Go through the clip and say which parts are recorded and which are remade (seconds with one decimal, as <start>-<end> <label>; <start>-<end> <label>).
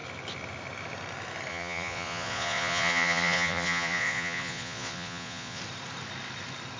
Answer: 0.0-1.5 recorded; 1.5-5.6 remade; 5.6-6.8 recorded